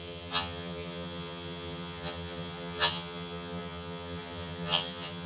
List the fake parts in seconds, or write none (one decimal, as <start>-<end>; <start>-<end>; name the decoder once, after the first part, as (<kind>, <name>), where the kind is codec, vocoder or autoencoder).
0.0-5.3 (vocoder, HiFi-GAN)